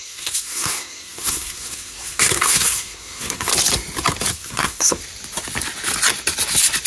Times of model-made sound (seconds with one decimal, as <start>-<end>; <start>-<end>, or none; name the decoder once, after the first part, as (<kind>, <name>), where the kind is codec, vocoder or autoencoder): 0.0-3.5 (codec, SNAC); 4.3-5.0